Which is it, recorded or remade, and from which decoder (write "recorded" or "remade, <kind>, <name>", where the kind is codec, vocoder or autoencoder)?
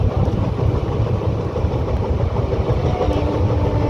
remade, vocoder, BigVGAN v2